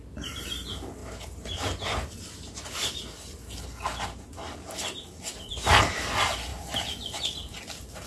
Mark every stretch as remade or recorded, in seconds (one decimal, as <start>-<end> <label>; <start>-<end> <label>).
0.0-1.0 recorded; 1.0-3.5 remade; 3.5-6.5 recorded; 6.5-7.2 remade; 7.2-8.1 recorded